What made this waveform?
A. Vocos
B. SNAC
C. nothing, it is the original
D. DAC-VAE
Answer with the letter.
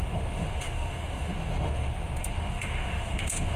D